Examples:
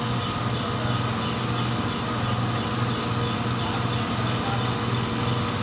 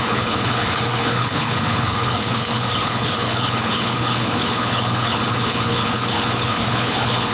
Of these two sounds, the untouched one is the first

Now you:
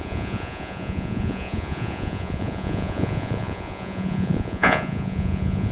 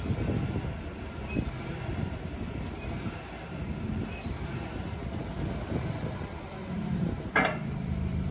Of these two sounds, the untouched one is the second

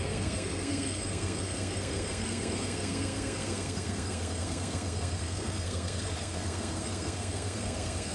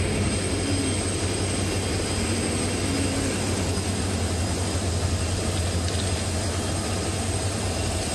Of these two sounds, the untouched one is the second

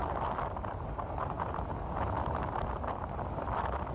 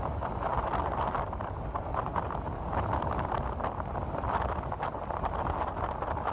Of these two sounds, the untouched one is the first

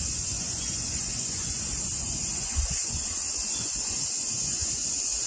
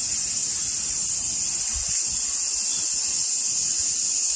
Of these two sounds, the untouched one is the second